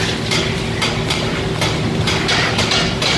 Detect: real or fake real